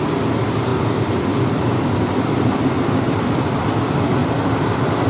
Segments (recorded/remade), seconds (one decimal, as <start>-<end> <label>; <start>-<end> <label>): 0.0-0.7 recorded; 0.7-3.2 remade; 3.2-5.1 recorded